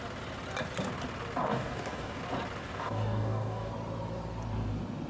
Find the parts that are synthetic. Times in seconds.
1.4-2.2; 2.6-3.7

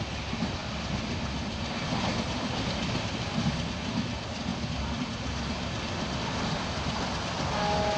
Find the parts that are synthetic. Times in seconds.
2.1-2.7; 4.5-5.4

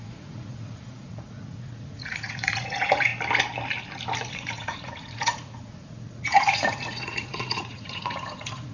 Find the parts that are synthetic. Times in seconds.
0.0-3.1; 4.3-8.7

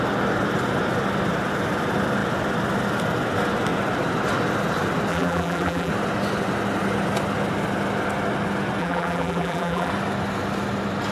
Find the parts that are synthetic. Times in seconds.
5.1-5.9; 8.8-9.9

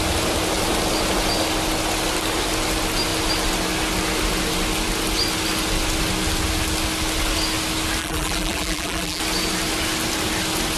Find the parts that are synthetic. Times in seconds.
8.0-9.2

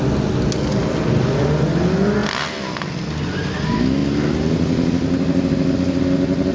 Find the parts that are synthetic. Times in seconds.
none

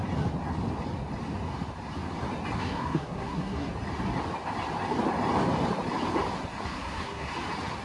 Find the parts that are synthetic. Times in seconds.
2.6-3.7; 6.7-7.3